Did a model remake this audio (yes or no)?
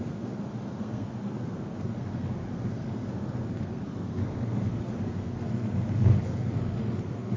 yes